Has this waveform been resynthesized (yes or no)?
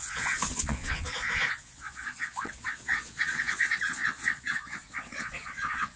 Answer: yes